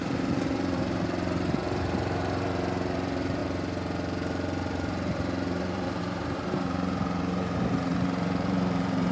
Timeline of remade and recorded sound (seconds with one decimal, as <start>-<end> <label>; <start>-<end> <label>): 0.0-9.1 remade